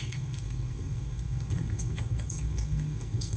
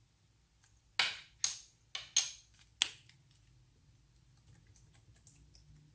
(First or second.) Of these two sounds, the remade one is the first